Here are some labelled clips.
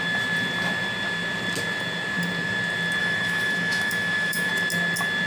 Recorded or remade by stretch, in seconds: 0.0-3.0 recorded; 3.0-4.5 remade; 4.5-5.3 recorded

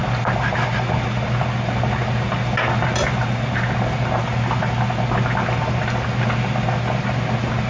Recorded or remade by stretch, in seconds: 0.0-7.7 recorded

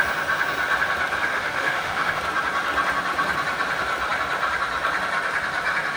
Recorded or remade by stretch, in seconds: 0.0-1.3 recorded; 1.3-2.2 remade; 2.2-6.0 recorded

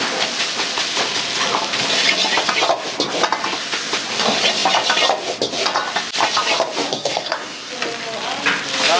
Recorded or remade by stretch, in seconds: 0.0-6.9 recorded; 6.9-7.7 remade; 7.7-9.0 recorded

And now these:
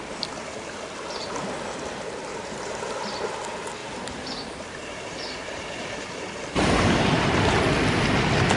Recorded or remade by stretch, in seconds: 0.0-2.3 recorded; 2.3-2.8 remade; 2.8-3.8 recorded; 3.8-7.4 remade; 7.4-8.6 recorded

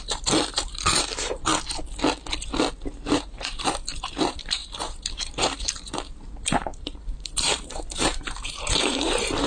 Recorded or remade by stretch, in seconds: 0.0-1.5 remade; 1.5-2.7 recorded; 2.7-9.5 remade

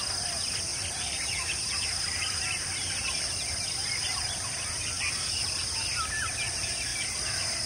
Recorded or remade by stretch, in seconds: 0.0-0.7 recorded; 0.7-3.0 remade; 3.0-3.8 recorded; 3.8-4.7 remade; 4.7-6.9 recorded; 6.9-7.7 remade

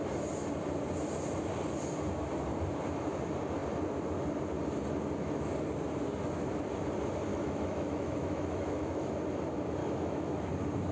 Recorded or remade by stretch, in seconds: 0.0-7.3 recorded; 7.3-9.1 remade; 9.1-9.8 recorded; 9.8-10.5 remade; 10.5-10.9 recorded